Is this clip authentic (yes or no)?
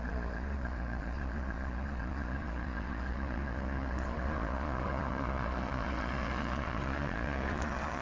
no